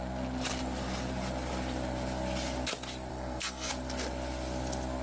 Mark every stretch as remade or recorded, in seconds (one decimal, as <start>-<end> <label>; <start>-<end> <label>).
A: 0.0-3.1 recorded; 3.1-3.7 remade; 3.7-5.0 recorded